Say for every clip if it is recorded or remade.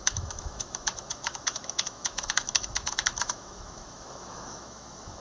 remade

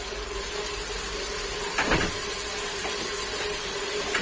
recorded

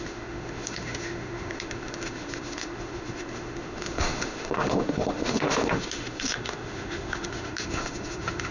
remade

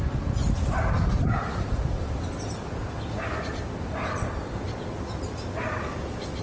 recorded